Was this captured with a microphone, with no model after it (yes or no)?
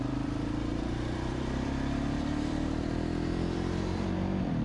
no